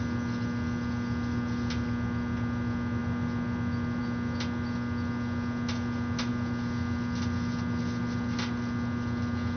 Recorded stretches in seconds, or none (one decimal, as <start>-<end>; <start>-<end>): 0.0-9.6